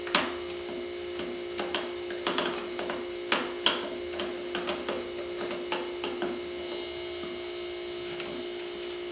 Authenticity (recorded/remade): recorded